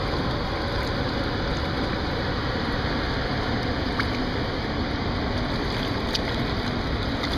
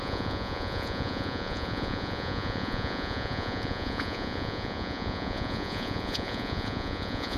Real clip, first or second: first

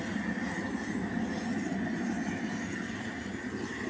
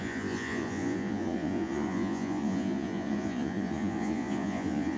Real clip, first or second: first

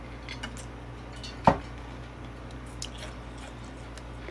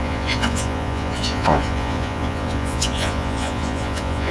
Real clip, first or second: first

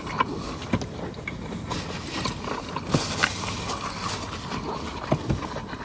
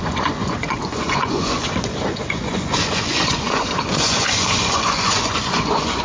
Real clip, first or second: first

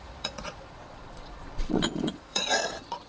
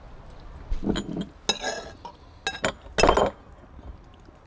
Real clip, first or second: second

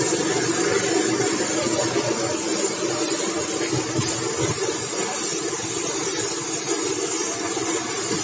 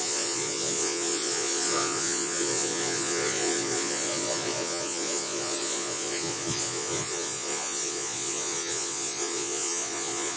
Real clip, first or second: first